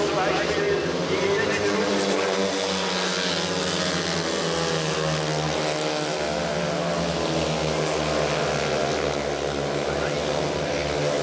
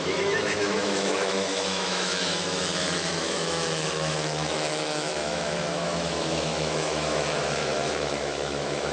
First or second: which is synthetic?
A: second